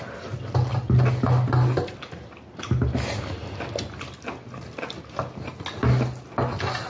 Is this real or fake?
real